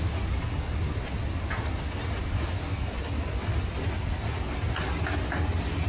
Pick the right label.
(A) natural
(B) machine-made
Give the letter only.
A